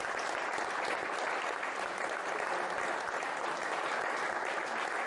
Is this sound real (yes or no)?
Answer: yes